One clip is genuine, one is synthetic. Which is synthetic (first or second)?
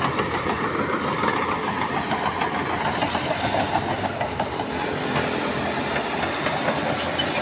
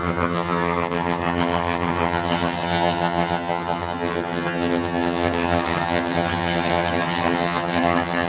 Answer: second